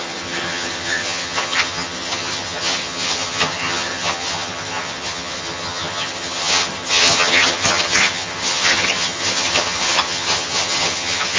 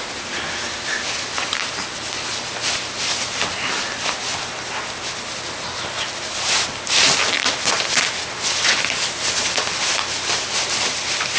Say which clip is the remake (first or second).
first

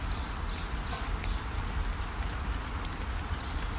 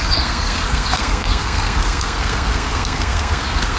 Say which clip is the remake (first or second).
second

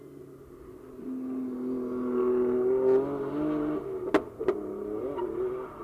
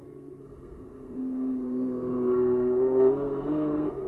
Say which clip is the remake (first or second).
second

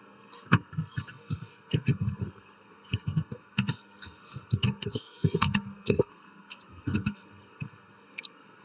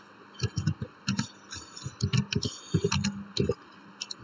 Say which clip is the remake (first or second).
first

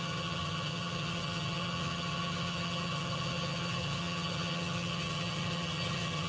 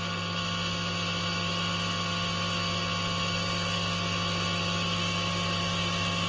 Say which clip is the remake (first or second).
first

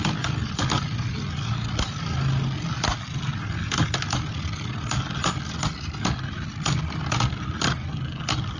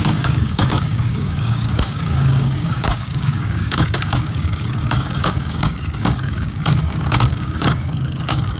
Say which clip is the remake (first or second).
second